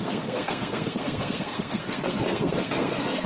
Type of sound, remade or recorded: remade